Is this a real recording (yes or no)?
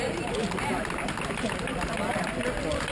yes